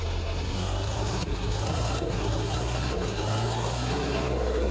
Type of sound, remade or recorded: remade